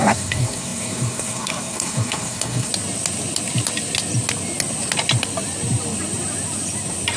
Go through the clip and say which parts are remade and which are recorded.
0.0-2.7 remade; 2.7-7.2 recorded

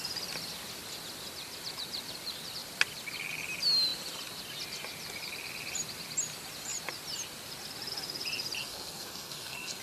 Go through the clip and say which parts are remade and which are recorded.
0.0-8.6 recorded; 8.6-9.8 remade

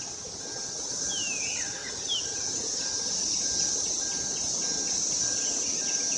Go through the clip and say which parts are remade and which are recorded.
0.0-6.2 recorded

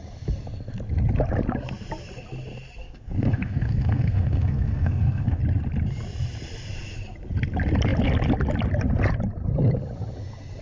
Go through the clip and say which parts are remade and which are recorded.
0.0-2.8 recorded; 2.8-5.4 remade; 5.4-10.6 recorded

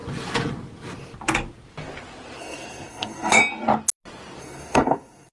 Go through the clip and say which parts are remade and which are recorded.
0.0-2.4 recorded; 2.4-3.4 remade; 3.4-4.4 recorded; 4.4-5.3 remade

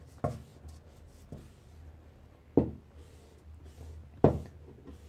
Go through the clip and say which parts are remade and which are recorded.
0.0-5.1 recorded

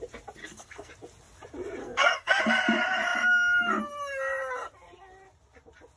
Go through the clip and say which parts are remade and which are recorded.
0.0-0.4 recorded; 0.4-0.9 remade; 0.9-1.8 recorded; 1.8-2.4 remade; 2.4-6.0 recorded